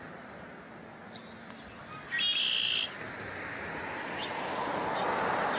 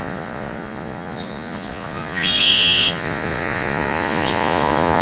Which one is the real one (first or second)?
first